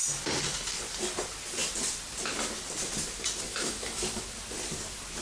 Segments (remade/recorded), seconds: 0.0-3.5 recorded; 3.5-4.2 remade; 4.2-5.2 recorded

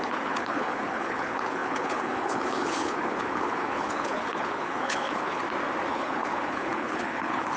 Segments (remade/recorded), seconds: 0.0-5.4 remade; 5.4-5.9 recorded; 5.9-7.6 remade

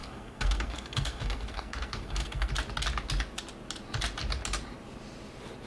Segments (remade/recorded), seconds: 0.0-2.5 remade; 2.5-5.7 recorded

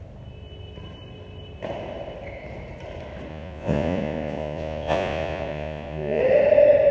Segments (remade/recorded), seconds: 0.0-3.3 recorded; 3.3-6.2 remade; 6.2-6.9 recorded

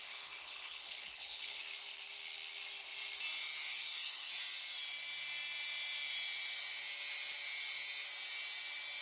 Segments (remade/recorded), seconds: 0.0-1.6 remade; 1.6-3.7 recorded; 3.7-4.3 remade; 4.3-9.0 recorded

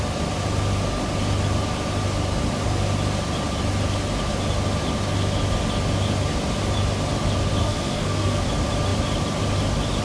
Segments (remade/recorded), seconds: 0.0-7.6 recorded; 7.6-8.4 remade; 8.4-10.0 recorded

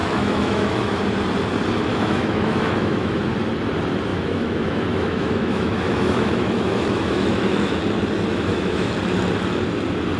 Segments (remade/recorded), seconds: 0.0-1.0 remade; 1.0-1.9 recorded; 1.9-3.2 remade; 3.2-4.1 recorded; 4.1-7.8 remade; 7.8-8.3 recorded; 8.3-8.9 remade; 8.9-10.2 recorded